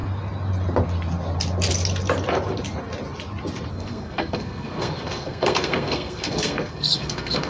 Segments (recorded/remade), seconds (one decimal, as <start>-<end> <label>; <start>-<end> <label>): 0.0-3.7 recorded; 3.7-7.5 remade